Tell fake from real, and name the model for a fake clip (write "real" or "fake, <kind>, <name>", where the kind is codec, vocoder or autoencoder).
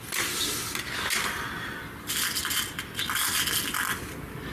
real